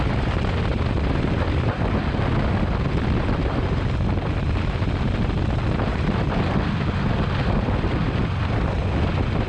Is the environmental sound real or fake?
real